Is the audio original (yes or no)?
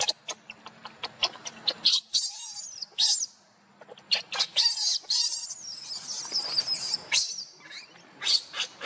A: yes